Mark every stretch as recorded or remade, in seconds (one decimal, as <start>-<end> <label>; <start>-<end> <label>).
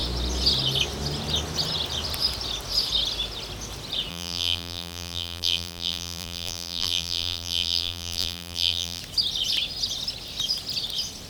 0.0-4.1 recorded; 4.1-9.0 remade; 9.0-11.3 recorded